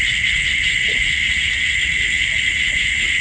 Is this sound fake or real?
fake